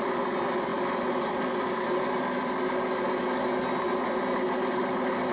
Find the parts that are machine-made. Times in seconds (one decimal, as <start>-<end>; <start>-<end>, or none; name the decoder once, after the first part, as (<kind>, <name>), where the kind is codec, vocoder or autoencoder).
none